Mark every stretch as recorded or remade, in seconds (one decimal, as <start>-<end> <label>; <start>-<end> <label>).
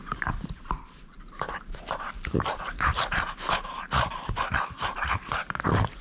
0.0-0.6 recorded; 0.6-6.0 remade